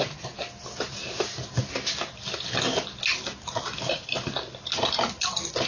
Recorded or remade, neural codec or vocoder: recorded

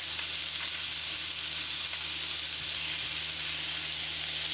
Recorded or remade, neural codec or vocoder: recorded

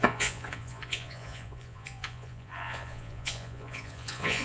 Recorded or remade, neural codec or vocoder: remade, vocoder, Vocos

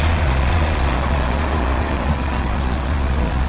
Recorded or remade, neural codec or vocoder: remade, vocoder, Vocos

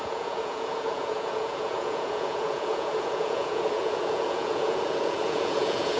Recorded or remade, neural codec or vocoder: remade, vocoder, Vocos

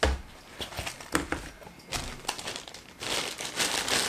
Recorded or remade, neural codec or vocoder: recorded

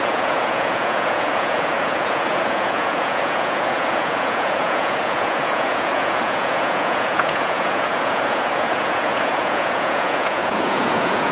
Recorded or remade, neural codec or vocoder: remade, vocoder, Vocos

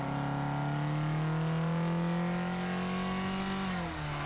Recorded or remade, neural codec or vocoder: recorded